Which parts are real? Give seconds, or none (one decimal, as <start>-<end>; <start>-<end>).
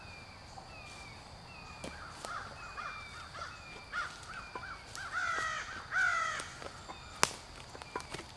0.0-6.1; 6.9-8.4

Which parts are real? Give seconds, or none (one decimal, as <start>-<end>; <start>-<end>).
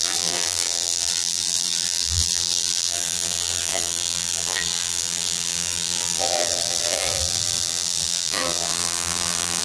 none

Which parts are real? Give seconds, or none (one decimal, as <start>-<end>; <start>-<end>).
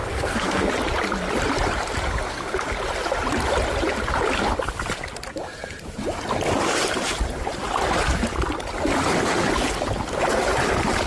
0.7-11.1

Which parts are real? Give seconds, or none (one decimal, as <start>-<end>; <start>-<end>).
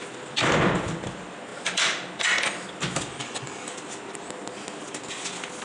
0.0-3.2; 3.7-5.6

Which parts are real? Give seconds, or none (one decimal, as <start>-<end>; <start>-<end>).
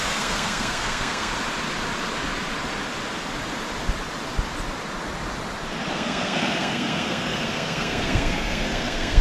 1.3-5.9